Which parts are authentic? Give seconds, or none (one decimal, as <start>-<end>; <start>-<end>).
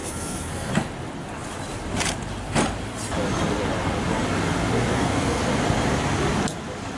0.7-4.9; 5.4-7.0